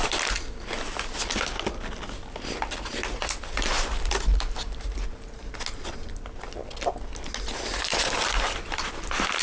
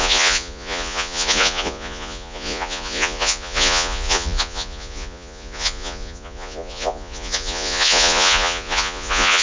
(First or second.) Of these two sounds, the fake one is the second